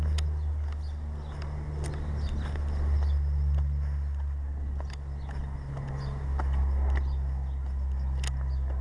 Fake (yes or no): no